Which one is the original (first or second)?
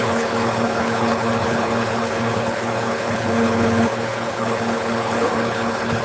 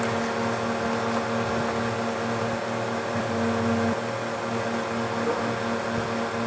second